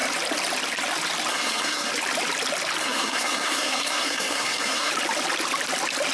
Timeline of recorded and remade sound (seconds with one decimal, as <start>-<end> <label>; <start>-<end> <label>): 0.0-1.3 recorded; 1.3-1.9 remade; 1.9-2.8 recorded; 2.8-4.9 remade; 4.9-6.1 recorded